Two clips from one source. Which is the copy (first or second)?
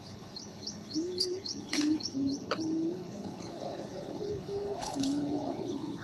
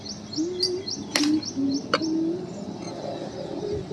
first